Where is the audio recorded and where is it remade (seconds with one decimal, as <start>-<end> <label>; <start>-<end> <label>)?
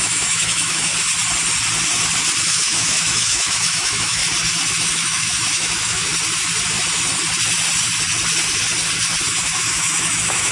0.0-0.9 remade; 0.9-2.4 recorded; 2.4-4.2 remade; 4.2-4.9 recorded; 4.9-6.1 remade; 6.1-9.4 recorded; 9.4-10.5 remade